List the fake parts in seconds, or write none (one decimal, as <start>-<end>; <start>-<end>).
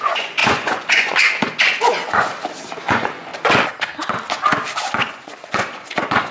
0.0-2.3; 2.8-3.3; 5.1-6.3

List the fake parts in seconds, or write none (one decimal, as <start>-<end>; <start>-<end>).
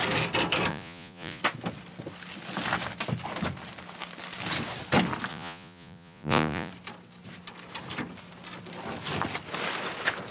0.7-1.4; 5.3-6.7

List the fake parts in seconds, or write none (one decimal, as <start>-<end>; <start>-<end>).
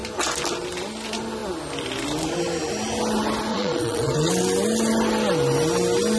3.5-4.3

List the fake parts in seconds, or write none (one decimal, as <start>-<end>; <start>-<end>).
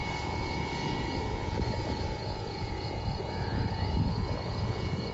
0.0-5.1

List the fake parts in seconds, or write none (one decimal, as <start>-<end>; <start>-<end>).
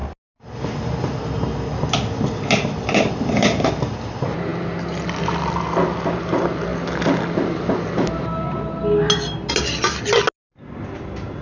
none